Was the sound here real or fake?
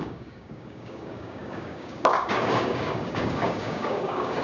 fake